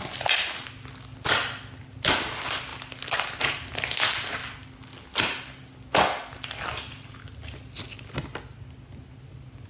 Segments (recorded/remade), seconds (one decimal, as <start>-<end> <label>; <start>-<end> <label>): 0.0-9.7 recorded